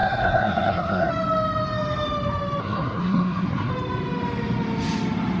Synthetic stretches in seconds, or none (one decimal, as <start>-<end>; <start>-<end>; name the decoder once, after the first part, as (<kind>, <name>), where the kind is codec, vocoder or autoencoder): 0.0-1.1 (codec, SNAC); 2.6-3.7